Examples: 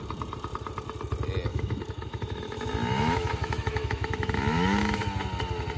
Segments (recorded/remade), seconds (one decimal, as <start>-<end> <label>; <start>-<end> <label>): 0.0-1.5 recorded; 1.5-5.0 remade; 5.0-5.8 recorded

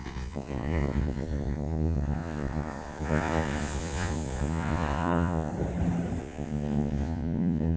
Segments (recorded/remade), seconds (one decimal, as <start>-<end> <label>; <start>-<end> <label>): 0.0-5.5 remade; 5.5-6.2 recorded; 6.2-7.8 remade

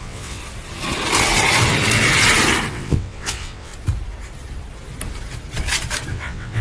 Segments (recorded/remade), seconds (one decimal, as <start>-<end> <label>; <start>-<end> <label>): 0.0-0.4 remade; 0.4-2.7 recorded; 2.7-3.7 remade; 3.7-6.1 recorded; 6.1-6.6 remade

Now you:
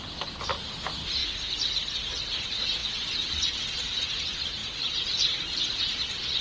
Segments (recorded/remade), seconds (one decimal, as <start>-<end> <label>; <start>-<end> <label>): 0.0-6.4 recorded

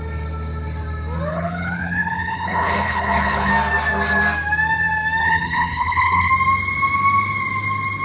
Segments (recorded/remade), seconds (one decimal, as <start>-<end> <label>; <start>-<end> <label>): 0.0-1.3 recorded; 1.3-3.5 remade; 3.5-5.2 recorded; 5.2-6.3 remade; 6.3-8.0 recorded

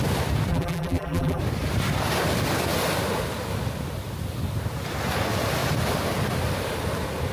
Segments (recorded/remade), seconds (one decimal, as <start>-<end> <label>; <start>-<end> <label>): 0.0-0.5 recorded; 0.5-1.4 remade; 1.4-7.3 recorded

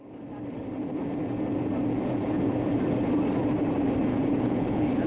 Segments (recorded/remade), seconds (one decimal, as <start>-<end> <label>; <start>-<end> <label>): 0.0-0.8 recorded; 0.8-2.8 remade; 2.8-4.1 recorded; 4.1-5.1 remade

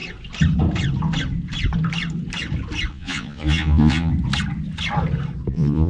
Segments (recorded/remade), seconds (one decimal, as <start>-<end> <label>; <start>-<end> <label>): 0.0-2.9 recorded; 2.9-4.1 remade; 4.1-5.5 recorded; 5.5-5.9 remade